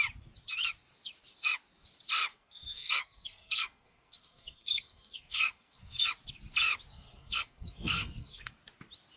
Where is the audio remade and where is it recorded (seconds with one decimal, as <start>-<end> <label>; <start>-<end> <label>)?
0.0-2.3 recorded; 2.3-6.0 remade; 6.0-6.9 recorded; 6.9-8.5 remade; 8.5-9.2 recorded